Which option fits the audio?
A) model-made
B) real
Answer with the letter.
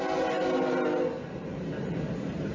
B